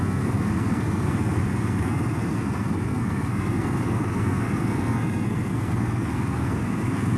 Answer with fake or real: fake